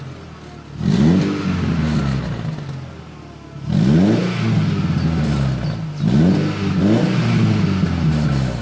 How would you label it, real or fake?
real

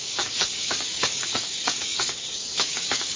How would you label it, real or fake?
fake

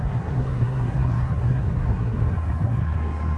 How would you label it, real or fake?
fake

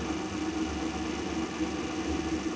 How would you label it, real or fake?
real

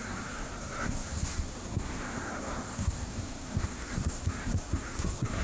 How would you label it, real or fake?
fake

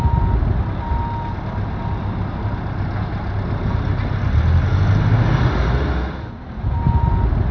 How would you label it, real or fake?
real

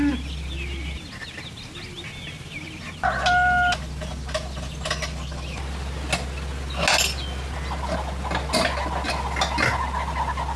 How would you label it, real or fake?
real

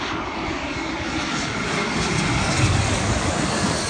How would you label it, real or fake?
fake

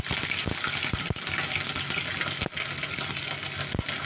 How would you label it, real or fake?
real